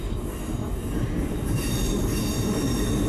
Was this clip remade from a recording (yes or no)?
no